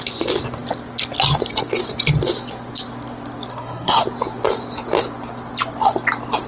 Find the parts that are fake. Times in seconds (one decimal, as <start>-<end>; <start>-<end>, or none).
3.5-4.0